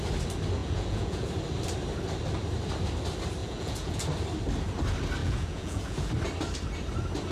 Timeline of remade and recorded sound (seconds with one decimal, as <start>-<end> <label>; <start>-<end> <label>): 0.0-0.6 recorded; 0.6-1.3 remade; 1.3-3.4 recorded; 3.4-4.0 remade; 4.0-5.2 recorded; 5.2-6.1 remade; 6.1-7.3 recorded